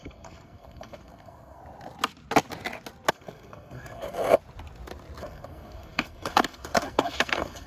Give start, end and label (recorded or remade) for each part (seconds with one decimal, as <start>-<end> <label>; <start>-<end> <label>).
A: 0.0-1.6 remade; 1.6-3.1 recorded; 3.1-4.4 remade; 4.4-5.2 recorded; 5.2-7.7 remade